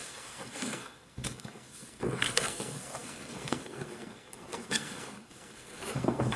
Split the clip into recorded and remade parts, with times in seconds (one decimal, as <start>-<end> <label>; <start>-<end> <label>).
0.0-6.4 remade